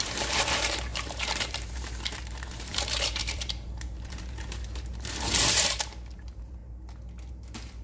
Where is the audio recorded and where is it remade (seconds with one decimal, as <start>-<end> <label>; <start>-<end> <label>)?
0.0-6.6 remade; 6.6-7.3 recorded; 7.3-7.8 remade